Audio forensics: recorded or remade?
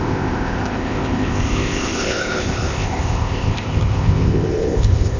remade